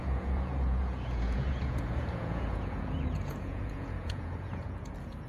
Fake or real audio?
fake